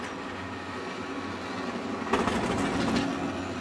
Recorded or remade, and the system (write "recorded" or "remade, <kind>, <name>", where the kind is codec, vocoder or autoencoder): recorded